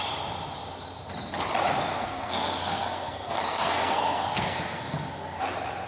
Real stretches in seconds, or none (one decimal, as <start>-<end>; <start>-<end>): 0.0-1.9; 5.4-5.9